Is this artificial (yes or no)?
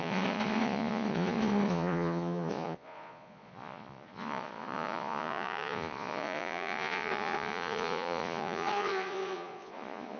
yes